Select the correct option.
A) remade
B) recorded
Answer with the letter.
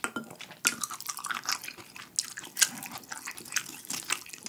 B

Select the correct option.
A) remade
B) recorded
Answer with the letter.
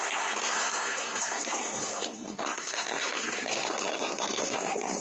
A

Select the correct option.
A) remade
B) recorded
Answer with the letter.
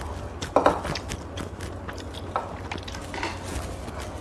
B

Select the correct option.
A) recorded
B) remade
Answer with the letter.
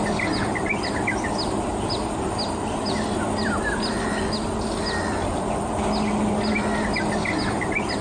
A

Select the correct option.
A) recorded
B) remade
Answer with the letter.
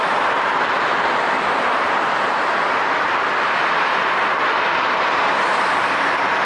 A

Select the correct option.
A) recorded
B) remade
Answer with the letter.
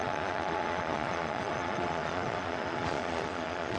B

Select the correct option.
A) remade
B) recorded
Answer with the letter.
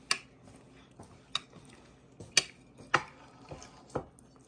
B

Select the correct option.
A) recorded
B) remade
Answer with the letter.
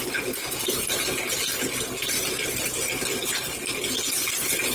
A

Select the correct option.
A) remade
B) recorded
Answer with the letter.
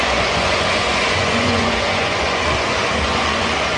A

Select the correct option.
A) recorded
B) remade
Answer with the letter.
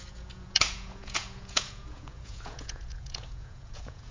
B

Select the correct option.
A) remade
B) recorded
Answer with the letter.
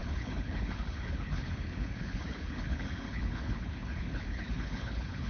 A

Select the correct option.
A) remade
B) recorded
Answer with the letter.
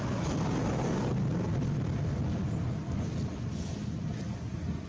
B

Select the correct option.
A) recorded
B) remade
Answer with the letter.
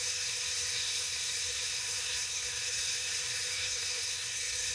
B